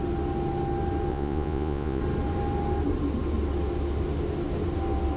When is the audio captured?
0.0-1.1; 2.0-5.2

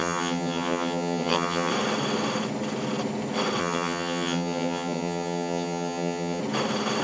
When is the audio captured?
1.7-3.6; 6.4-7.0

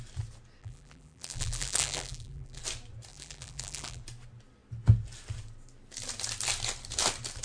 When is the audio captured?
0.0-0.6; 2.6-3.1; 4.0-7.4

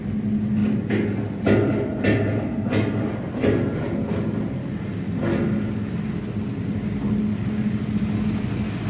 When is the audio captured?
0.0-8.9

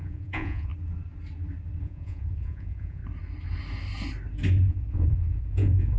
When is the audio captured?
0.7-1.8; 3.0-4.7